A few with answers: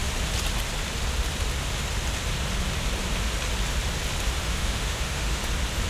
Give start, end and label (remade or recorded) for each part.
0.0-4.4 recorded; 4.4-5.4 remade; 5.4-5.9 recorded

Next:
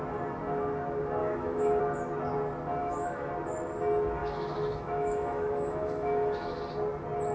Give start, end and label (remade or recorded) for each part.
0.0-1.2 recorded; 1.2-1.8 remade; 1.8-2.8 recorded; 2.8-3.3 remade; 3.3-4.2 recorded; 4.2-6.6 remade; 6.6-7.3 recorded

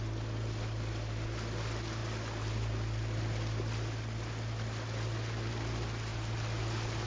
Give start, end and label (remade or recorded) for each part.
0.0-7.1 recorded

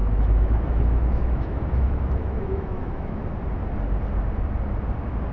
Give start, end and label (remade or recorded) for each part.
0.0-3.2 remade; 3.2-5.3 recorded

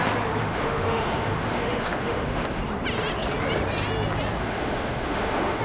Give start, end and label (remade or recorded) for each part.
0.0-0.4 recorded; 0.4-2.6 remade; 2.6-4.4 recorded; 4.4-5.6 remade